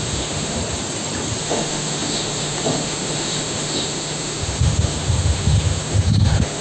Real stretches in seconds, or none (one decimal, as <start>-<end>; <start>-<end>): 0.6-1.4